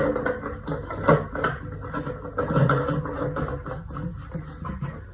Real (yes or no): yes